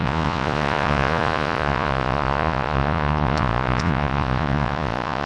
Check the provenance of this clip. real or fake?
fake